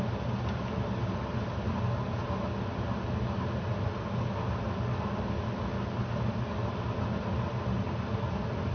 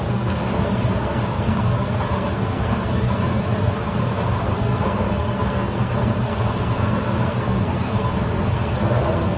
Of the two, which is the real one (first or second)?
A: first